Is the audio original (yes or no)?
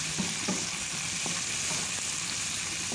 yes